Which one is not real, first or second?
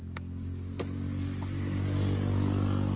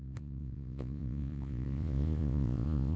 second